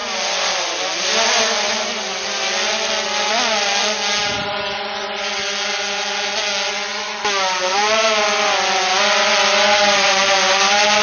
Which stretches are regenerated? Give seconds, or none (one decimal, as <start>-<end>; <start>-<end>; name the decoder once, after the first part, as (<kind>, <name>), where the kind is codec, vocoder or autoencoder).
none